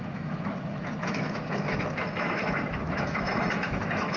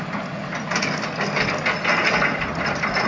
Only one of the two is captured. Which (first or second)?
second